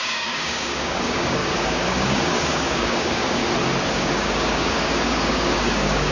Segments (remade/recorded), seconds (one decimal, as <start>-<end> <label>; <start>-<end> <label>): 0.0-3.4 remade; 3.4-3.9 recorded; 3.9-6.1 remade